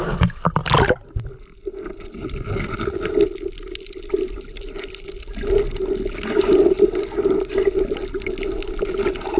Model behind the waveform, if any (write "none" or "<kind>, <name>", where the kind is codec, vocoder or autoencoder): none